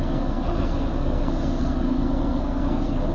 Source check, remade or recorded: remade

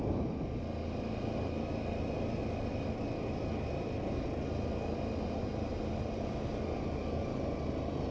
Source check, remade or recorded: recorded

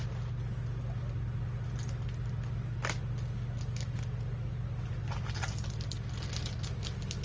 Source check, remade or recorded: recorded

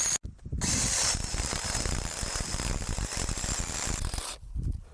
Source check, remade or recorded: recorded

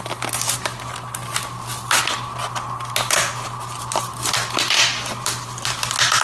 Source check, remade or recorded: recorded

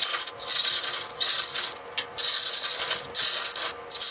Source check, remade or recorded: recorded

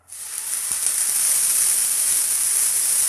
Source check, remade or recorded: recorded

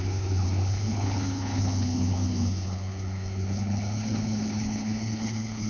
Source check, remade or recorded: remade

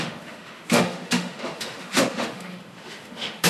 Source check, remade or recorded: remade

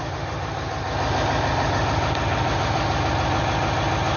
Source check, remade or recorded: recorded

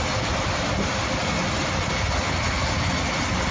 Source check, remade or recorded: recorded